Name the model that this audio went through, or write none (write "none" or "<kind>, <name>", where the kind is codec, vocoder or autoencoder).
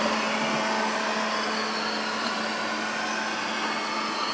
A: none